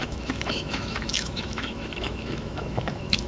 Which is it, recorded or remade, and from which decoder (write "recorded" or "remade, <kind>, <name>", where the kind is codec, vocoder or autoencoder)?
remade, autoencoder, DAC-VAE